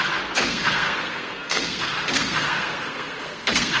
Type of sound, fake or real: fake